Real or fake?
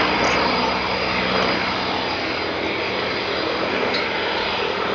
real